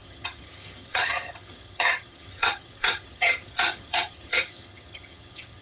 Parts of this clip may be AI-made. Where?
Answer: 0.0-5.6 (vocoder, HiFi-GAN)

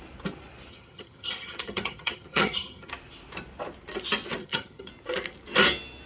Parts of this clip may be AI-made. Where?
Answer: 0.7-2.9 (vocoder, HiFi-GAN); 4.4-4.9